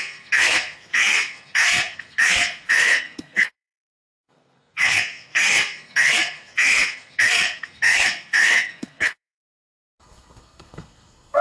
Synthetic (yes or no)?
yes